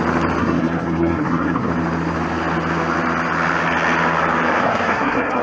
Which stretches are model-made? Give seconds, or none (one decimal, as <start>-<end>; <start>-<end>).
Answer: 0.4-1.7; 4.6-5.4